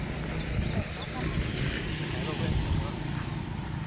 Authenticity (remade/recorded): recorded